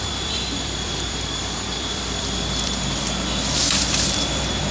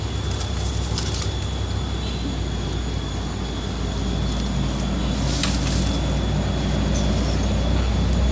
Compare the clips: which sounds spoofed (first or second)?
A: first